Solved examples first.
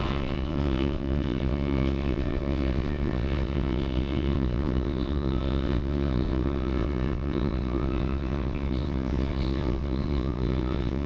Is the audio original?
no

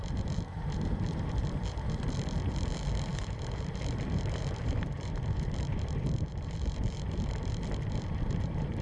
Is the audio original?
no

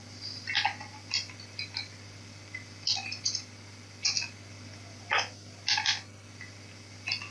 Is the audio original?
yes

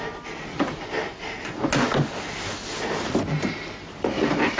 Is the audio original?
yes